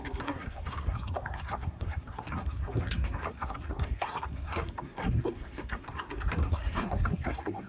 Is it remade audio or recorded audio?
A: remade